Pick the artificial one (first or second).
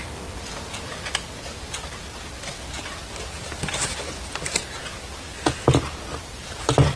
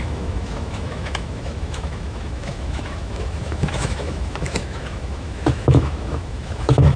second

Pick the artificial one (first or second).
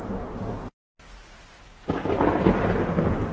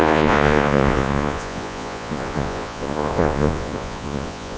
second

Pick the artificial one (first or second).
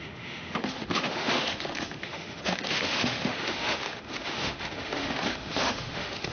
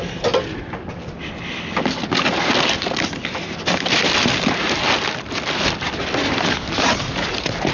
first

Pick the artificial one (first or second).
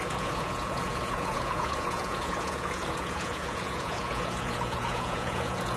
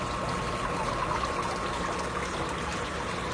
first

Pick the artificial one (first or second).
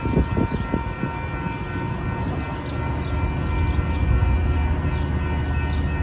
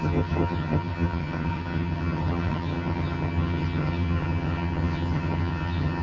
second